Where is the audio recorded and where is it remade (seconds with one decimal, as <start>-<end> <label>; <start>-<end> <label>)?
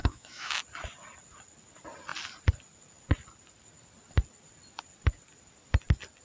0.0-0.6 remade; 0.6-6.2 recorded